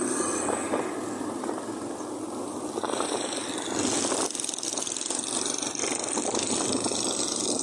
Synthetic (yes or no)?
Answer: no